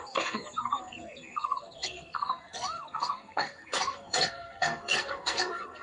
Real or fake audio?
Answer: fake